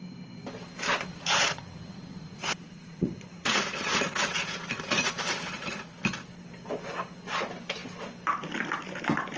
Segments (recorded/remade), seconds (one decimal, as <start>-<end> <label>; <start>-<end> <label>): 0.0-1.1 recorded; 1.1-5.9 remade; 5.9-9.4 recorded

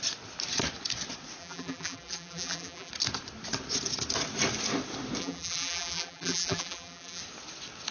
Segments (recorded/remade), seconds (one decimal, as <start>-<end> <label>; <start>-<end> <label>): 0.0-1.4 recorded; 1.4-2.9 remade; 2.9-5.2 recorded; 5.2-7.2 remade; 7.2-7.9 recorded

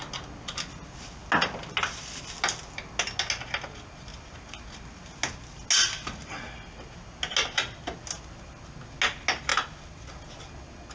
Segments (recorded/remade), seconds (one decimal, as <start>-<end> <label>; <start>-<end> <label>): 0.0-10.9 recorded